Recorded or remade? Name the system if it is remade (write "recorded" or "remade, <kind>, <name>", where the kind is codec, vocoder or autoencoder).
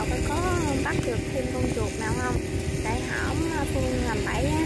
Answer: recorded